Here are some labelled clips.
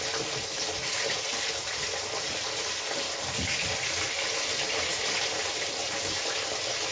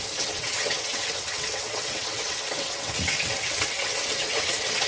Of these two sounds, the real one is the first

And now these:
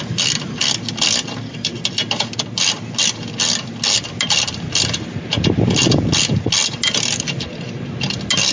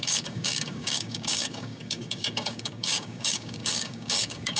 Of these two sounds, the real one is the first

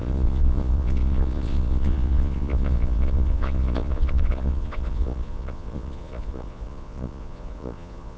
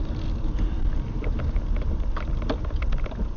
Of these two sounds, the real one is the second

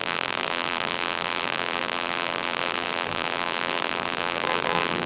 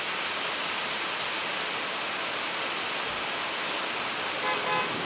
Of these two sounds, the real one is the second